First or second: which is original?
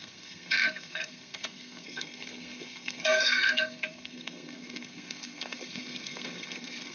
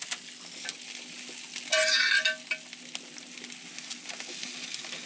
second